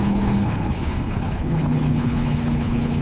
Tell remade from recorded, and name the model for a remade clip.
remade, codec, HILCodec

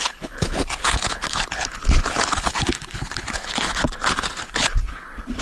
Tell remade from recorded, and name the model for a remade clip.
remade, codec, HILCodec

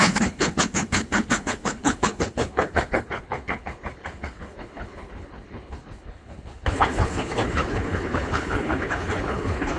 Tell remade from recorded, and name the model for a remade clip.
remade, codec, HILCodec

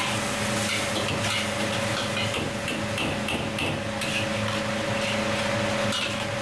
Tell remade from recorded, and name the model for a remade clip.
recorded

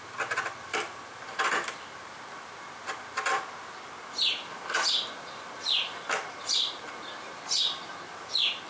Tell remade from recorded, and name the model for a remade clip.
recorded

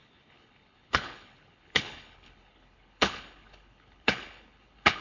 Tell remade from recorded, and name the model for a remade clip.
remade, codec, HILCodec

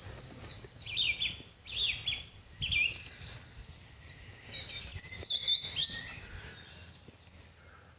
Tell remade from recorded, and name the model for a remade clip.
recorded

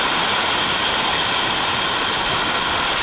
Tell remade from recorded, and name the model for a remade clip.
recorded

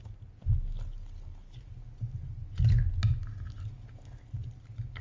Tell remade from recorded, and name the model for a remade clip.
recorded